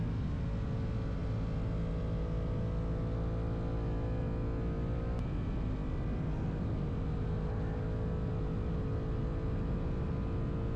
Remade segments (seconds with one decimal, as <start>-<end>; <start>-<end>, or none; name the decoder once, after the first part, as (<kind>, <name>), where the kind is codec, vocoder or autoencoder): none